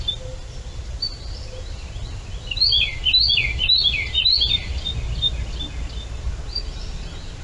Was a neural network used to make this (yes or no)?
no